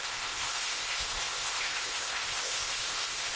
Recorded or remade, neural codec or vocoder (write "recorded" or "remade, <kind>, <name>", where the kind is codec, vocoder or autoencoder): remade, codec, ZipCodec